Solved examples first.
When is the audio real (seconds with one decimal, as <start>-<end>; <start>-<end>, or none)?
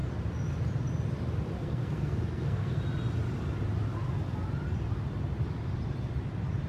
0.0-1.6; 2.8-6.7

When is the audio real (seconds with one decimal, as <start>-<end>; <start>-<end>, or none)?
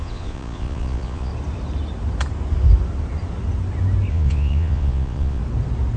1.3-4.1; 5.4-6.0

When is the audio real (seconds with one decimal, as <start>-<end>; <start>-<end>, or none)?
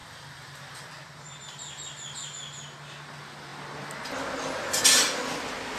0.9-5.8